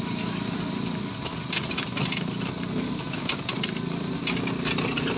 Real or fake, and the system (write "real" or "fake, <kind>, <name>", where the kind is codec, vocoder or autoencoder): real